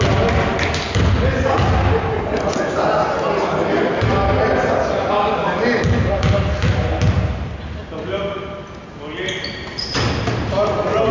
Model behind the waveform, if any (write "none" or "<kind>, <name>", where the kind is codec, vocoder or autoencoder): none